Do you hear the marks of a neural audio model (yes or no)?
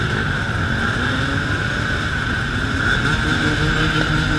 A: no